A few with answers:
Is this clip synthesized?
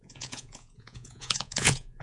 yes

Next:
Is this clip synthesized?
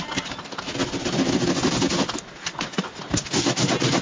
no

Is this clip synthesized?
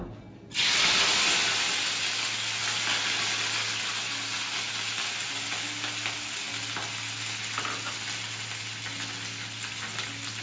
no